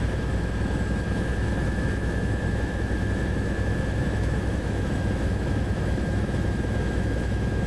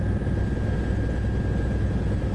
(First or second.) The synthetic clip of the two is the first